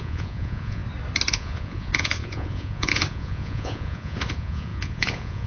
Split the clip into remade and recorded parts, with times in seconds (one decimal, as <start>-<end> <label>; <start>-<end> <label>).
0.0-0.8 remade; 0.8-1.3 recorded; 1.3-5.5 remade